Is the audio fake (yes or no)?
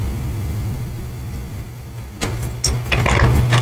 no